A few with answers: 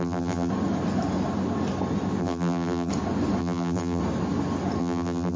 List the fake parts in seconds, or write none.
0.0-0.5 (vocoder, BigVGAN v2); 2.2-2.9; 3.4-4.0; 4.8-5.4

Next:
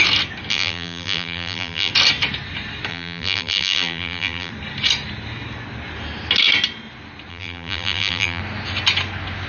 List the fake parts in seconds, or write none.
0.5-1.9 (vocoder, BigVGAN v2); 2.9-4.5; 7.3-8.4

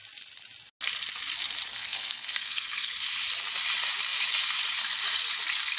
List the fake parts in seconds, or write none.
1.7-2.9 (codec, SNAC)

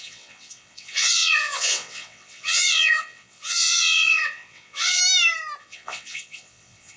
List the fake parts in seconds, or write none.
0.0-5.0 (vocoder, WaveNeXt); 5.6-7.0

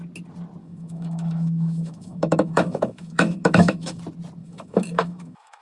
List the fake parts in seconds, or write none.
0.6-4.0 (autoencoder, DAC-VAE); 4.4-5.6

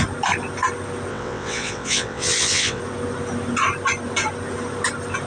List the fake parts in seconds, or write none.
1.1-2.8 (vocoder, WaveNeXt)